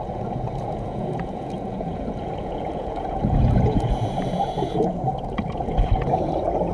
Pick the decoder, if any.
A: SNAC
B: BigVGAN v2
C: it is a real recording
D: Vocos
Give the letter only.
D